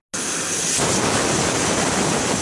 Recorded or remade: recorded